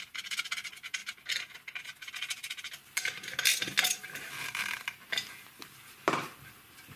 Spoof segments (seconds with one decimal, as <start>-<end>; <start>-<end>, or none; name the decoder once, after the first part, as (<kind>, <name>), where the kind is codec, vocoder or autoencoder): none